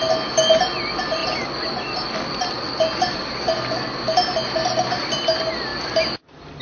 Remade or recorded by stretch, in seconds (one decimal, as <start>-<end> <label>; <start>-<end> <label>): 0.0-6.6 recorded